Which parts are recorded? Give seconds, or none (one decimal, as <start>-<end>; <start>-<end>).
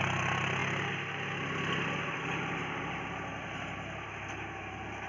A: 0.0-5.1